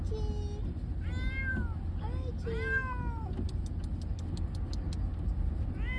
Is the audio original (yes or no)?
yes